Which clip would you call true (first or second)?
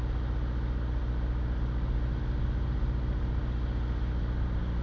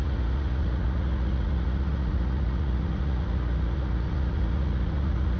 first